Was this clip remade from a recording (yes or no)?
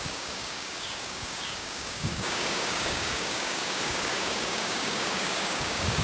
yes